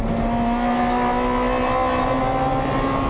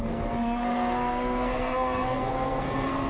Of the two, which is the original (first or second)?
first